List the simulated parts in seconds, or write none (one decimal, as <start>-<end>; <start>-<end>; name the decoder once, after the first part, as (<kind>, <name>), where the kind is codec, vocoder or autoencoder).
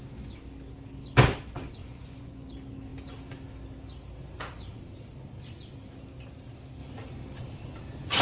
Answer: 1.8-2.5 (vocoder, Vocos)